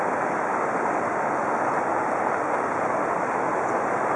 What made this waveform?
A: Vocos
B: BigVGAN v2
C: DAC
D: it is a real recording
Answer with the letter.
D